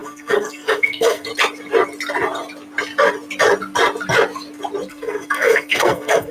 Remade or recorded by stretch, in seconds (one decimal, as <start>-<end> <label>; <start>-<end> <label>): 0.0-1.3 remade; 1.3-4.9 recorded; 4.9-6.3 remade